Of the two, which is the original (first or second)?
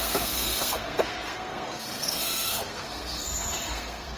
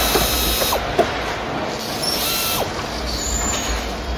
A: second